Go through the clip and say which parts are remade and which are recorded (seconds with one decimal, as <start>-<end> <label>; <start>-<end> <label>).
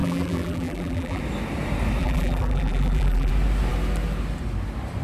0.0-1.2 remade; 1.2-2.0 recorded; 2.0-3.3 remade; 3.3-5.0 recorded